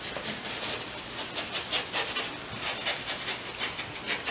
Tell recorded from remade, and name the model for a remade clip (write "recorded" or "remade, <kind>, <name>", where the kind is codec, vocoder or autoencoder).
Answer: recorded